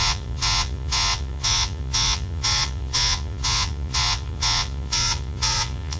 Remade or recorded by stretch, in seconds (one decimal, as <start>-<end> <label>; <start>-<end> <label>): 0.0-6.0 remade